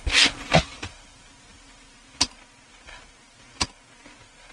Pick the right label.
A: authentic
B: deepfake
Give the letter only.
A